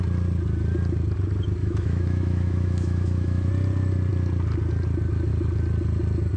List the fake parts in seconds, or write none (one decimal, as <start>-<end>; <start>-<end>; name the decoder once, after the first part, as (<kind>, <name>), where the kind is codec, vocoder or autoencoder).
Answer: 1.6-3.5 (autoencoder, DAC-VAE)